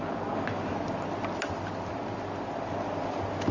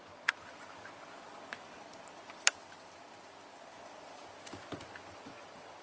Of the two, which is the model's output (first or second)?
second